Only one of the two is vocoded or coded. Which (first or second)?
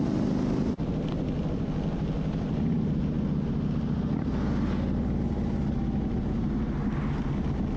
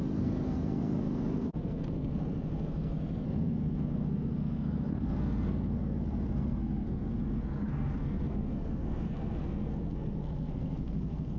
second